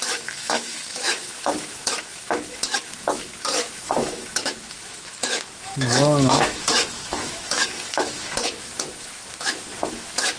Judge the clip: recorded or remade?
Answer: remade